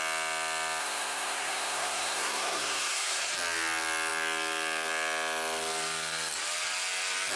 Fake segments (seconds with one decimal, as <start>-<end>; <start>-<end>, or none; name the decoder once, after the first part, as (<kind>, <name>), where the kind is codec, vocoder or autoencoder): 0.8-3.3 (codec, SNAC)